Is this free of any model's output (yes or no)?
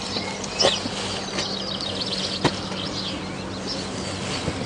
yes